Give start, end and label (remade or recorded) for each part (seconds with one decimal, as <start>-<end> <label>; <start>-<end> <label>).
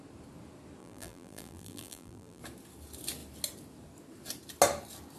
0.0-0.8 recorded; 0.8-2.4 remade; 2.4-5.2 recorded